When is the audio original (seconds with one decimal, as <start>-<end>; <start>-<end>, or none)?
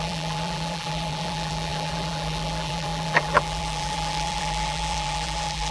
none